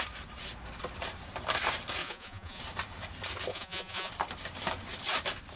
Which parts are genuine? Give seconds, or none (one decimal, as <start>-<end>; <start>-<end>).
0.0-2.0; 2.6-3.5; 4.1-5.6